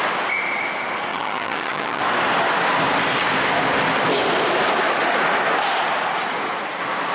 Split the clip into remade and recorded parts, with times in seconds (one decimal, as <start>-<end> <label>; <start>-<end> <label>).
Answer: 0.0-1.1 recorded; 1.1-2.0 remade; 2.0-7.1 recorded